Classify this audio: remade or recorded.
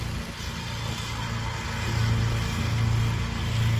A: recorded